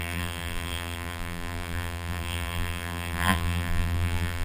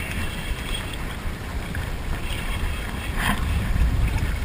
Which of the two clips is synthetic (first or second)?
first